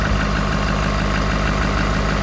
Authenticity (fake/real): real